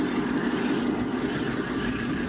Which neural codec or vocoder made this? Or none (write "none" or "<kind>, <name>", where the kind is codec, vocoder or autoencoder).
none